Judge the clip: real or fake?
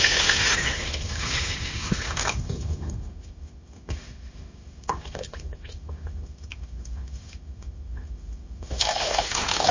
fake